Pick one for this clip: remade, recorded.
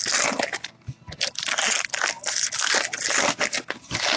recorded